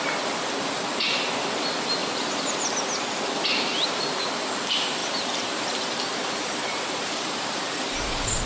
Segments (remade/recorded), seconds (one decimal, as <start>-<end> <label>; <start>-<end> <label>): 0.0-2.0 recorded; 2.0-2.7 remade; 2.7-5.0 recorded; 5.0-8.4 remade